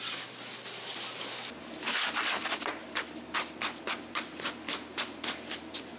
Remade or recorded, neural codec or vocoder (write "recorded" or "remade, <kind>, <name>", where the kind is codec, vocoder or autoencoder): recorded